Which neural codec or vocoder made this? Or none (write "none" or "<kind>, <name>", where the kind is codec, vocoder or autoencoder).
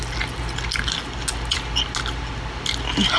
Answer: none